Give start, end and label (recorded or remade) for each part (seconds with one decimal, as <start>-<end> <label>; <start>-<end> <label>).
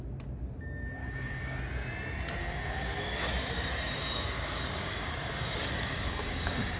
0.0-1.0 recorded; 1.0-1.6 remade; 1.6-2.4 recorded; 2.4-6.8 remade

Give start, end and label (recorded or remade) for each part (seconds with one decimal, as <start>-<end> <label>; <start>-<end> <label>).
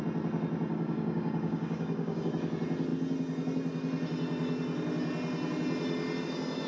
0.0-0.7 recorded; 0.7-2.3 remade; 2.3-6.7 recorded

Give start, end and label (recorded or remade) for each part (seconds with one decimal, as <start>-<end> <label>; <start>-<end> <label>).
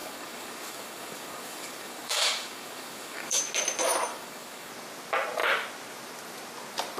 0.0-3.4 remade; 3.4-4.1 recorded; 4.1-4.7 remade; 4.7-7.0 recorded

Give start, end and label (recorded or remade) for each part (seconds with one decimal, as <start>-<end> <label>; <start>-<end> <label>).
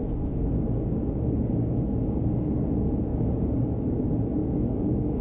0.0-2.5 remade; 2.5-3.1 recorded; 3.1-3.9 remade; 3.9-4.4 recorded; 4.4-5.2 remade